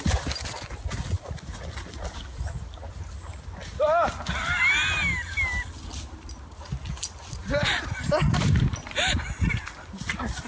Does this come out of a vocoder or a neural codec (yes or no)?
no